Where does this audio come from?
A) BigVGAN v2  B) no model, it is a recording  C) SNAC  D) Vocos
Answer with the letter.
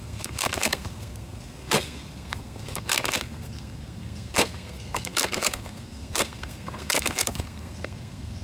C